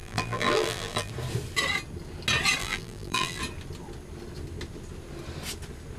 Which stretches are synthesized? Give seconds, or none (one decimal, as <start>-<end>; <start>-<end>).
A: 0.0-1.1; 2.6-3.4